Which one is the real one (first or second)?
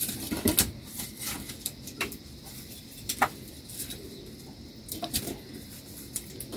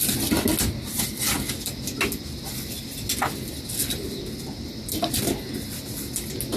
second